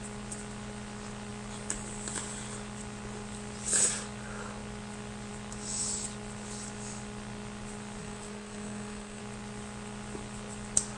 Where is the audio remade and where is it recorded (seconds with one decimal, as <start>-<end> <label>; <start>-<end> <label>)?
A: 0.0-8.0 recorded; 8.0-9.2 remade; 9.2-11.0 recorded